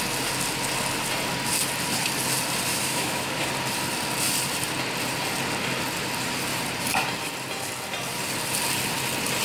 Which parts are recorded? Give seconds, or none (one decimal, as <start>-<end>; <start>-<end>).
0.0-2.7; 3.5-9.4